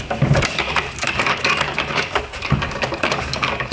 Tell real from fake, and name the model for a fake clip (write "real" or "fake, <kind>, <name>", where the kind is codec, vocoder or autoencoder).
fake, codec, DAC